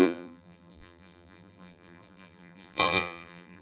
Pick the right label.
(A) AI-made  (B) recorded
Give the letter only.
A